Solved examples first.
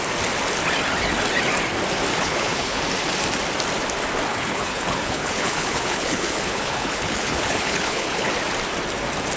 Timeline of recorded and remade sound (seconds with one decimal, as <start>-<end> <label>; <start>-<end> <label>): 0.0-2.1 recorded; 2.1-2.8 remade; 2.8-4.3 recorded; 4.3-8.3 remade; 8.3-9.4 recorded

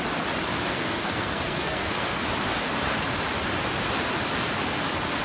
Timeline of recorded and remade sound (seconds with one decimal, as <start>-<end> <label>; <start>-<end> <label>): 0.0-0.7 recorded; 0.7-2.2 remade; 2.2-5.2 recorded

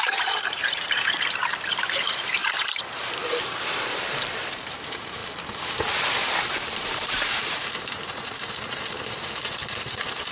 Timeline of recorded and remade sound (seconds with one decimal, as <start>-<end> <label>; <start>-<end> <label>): 0.0-5.2 remade; 5.2-6.4 recorded; 6.4-10.3 remade

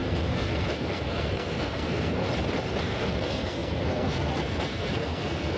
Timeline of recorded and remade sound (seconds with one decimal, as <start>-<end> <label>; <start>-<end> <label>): 0.0-2.2 remade; 2.2-2.8 recorded; 2.8-5.6 remade

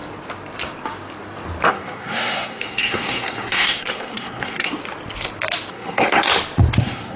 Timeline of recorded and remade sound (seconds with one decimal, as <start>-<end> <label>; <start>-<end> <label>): 0.0-1.7 recorded; 1.7-4.8 remade; 4.8-5.7 recorded; 5.7-6.3 remade; 6.3-6.8 recorded; 6.8-7.2 remade